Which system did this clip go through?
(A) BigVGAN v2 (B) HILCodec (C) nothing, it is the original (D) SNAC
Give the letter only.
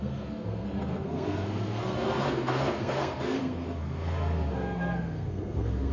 D